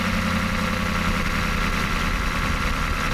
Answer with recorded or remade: recorded